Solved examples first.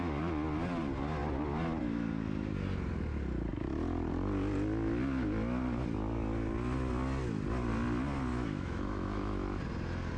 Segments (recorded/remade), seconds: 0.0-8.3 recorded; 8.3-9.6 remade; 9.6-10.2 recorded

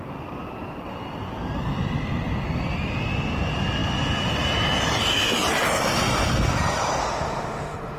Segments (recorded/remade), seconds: 0.0-7.0 recorded; 7.0-8.0 remade